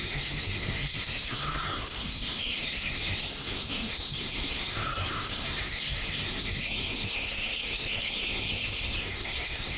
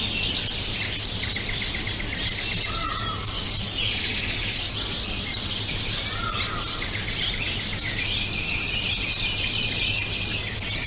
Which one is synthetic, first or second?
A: first